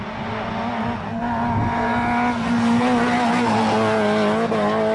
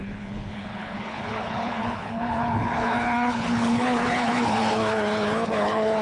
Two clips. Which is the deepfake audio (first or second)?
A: second